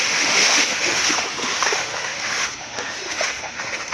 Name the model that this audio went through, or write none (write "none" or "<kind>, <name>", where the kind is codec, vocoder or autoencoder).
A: autoencoder, DAC-VAE